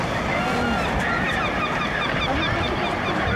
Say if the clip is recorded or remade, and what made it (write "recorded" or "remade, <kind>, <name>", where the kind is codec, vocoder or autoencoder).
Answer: recorded